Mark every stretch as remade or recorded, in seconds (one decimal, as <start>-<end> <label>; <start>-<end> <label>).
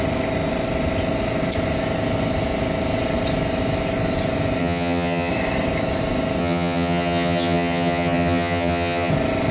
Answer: 0.0-4.6 recorded; 4.6-5.3 remade; 5.3-6.4 recorded; 6.4-9.1 remade; 9.1-9.5 recorded